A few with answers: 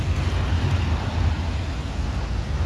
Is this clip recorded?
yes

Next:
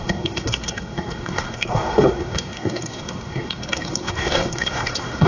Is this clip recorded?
no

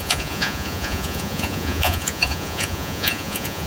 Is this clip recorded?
no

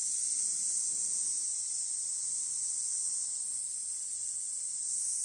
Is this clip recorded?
yes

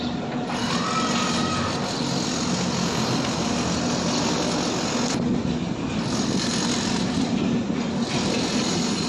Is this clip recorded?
yes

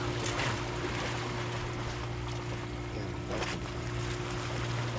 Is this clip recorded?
yes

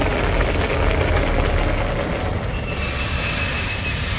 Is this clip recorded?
yes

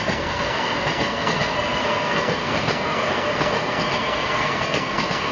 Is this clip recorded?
no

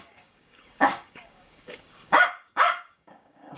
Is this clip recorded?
no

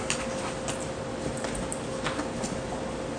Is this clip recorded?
yes